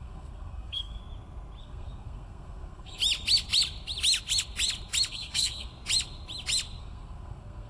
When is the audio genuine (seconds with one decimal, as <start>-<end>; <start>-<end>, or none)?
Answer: 1.0-1.6; 3.0-5.1; 5.7-6.8